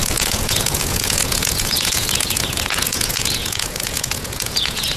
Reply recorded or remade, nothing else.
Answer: remade